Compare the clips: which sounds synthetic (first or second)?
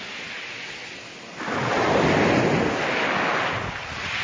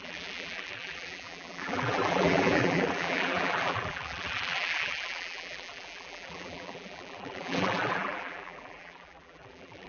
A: second